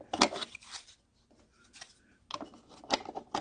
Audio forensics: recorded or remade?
recorded